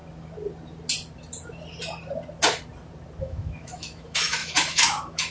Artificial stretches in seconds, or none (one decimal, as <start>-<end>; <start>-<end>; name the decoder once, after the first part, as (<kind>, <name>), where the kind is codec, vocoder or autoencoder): 3.2-5.3 (autoencoder, DAC-VAE)